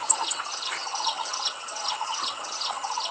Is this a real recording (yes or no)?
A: no